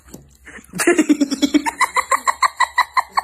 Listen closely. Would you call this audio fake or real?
real